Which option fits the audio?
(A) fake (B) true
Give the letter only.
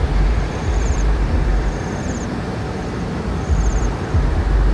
A